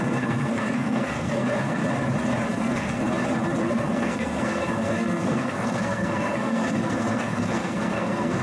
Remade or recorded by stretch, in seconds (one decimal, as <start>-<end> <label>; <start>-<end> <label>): 0.0-1.8 remade; 1.8-2.6 recorded; 2.6-3.0 remade; 3.0-3.7 recorded; 3.7-8.4 remade